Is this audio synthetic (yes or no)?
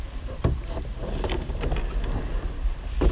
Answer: no